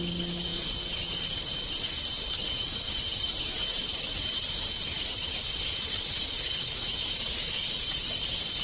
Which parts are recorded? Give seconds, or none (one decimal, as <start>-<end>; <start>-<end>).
0.0-0.5; 5.0-6.9; 8.1-8.6